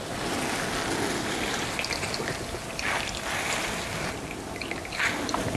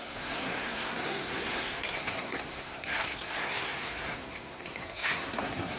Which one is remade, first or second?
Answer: second